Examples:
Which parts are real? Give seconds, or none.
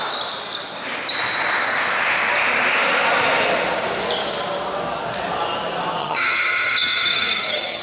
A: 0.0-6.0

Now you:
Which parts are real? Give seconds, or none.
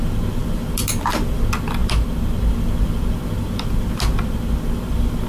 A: 0.0-5.3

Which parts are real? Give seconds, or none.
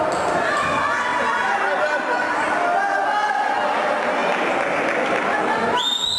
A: 0.0-6.2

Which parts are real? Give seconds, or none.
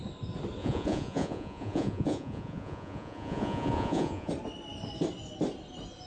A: 0.0-0.6; 4.3-6.1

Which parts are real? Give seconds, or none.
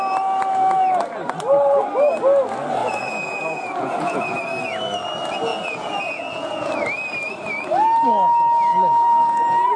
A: 0.0-2.8; 4.4-5.5; 6.7-8.7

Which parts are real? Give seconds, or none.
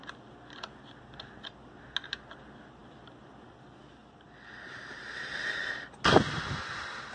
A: 0.0-7.1